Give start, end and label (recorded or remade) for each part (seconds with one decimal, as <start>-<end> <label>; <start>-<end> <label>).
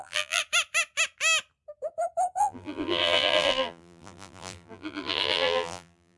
0.0-0.4 remade; 0.4-2.4 recorded; 2.4-6.2 remade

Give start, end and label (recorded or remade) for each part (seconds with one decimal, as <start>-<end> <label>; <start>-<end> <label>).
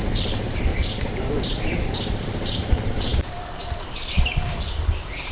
0.0-0.7 remade; 0.7-1.2 recorded; 1.2-5.3 remade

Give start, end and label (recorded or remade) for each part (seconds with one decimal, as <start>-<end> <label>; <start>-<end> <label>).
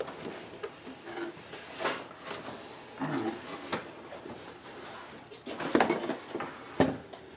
0.0-3.7 recorded; 3.7-4.9 remade; 4.9-7.4 recorded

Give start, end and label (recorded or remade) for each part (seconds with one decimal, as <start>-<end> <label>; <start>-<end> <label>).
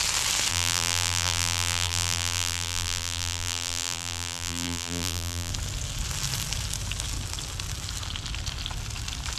0.0-0.5 recorded; 0.5-5.5 remade; 5.5-9.4 recorded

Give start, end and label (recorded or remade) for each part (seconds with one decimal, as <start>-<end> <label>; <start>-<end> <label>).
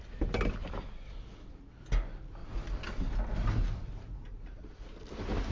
0.0-0.6 recorded; 0.6-1.5 remade; 1.5-2.4 recorded; 2.4-3.1 remade; 3.1-5.5 recorded